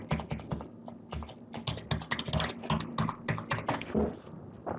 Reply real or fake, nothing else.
real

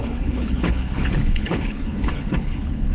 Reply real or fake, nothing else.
fake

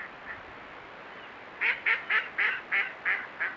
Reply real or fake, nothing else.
fake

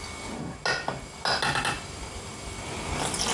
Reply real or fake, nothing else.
real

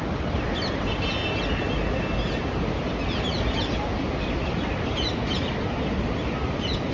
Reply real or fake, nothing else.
real